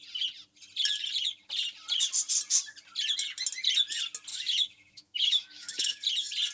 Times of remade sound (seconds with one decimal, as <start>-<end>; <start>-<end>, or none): 4.3-6.0